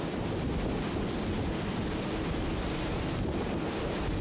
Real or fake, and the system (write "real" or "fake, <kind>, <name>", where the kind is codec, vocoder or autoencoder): real